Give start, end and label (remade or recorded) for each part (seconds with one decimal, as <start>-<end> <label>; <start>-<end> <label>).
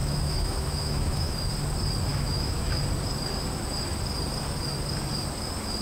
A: 0.0-1.5 remade; 1.5-2.1 recorded; 2.1-2.8 remade; 2.8-5.8 recorded